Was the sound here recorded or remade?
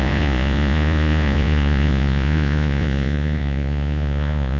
remade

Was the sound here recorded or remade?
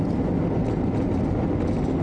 recorded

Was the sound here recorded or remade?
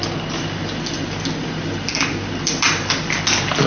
recorded